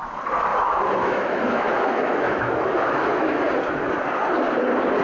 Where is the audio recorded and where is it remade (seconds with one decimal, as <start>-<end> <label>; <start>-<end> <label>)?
0.0-0.5 recorded; 0.5-3.5 remade; 3.5-5.0 recorded